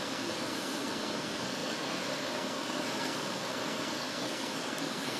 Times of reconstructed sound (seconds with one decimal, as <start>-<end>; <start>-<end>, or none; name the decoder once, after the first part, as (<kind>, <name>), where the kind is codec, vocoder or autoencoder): 0.0-5.2 (codec, SNAC)